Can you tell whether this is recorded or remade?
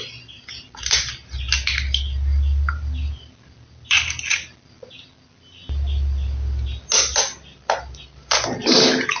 recorded